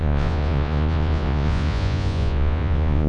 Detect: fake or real fake